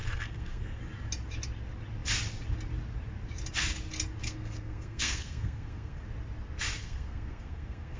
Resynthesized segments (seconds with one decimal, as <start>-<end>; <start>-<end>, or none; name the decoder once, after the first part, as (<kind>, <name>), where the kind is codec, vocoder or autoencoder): 0.0-0.8 (codec, SNAC); 4.2-6.0; 6.8-8.0